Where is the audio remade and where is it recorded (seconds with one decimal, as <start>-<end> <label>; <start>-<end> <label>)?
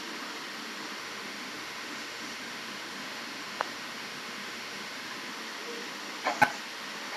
0.0-1.0 recorded; 1.0-5.3 remade; 5.3-7.2 recorded